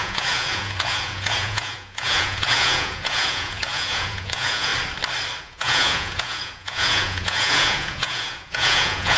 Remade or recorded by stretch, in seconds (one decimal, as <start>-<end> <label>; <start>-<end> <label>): 0.0-4.7 remade; 4.7-5.4 recorded; 5.4-9.2 remade